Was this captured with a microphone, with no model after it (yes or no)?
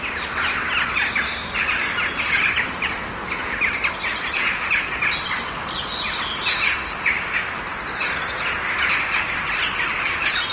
yes